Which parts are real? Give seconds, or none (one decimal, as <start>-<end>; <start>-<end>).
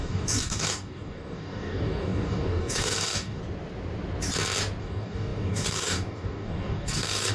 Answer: 3.4-4.8